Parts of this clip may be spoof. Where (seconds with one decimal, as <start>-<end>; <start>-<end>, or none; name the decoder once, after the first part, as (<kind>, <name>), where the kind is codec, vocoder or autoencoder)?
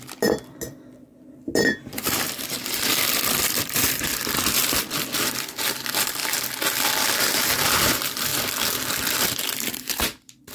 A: 0.0-1.1 (vocoder, BigVGAN v2); 1.7-6.2; 7.6-10.5